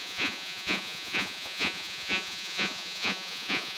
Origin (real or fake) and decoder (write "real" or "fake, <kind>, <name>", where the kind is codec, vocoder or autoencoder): fake, vocoder, Vocos